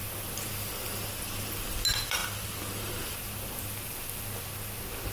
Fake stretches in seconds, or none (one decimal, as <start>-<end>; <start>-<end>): none